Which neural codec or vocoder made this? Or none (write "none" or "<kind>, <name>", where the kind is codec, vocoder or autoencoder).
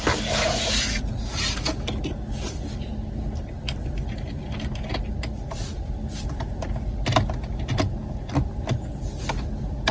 none